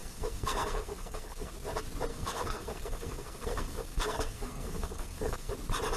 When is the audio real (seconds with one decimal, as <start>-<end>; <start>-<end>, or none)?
1.5-2.1; 5.5-6.0